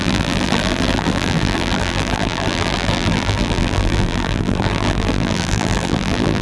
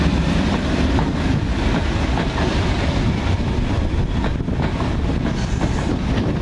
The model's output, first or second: first